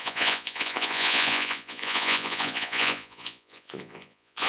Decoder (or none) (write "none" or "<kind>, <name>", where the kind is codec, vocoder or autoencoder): vocoder, Vocos